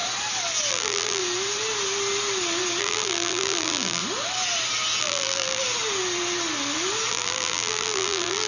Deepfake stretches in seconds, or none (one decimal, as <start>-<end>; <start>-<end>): 0.7-1.2; 2.8-4.0; 5.0-5.6; 7.1-8.5